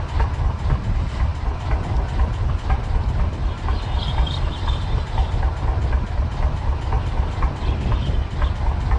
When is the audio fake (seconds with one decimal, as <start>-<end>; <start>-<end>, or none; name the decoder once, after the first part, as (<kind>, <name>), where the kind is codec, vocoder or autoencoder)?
none